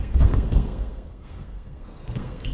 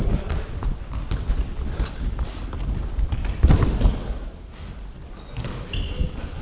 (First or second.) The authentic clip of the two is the second